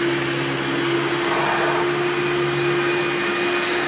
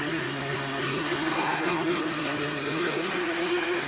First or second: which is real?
first